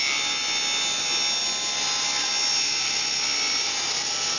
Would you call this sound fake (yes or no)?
no